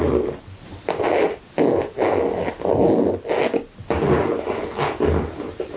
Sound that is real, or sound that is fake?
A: real